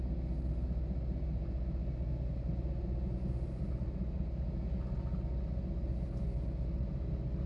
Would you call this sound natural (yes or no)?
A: yes